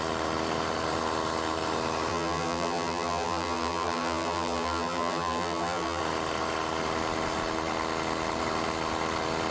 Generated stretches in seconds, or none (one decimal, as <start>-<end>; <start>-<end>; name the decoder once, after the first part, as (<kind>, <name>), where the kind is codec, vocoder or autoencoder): 2.1-6.0 (vocoder, BigVGAN v2)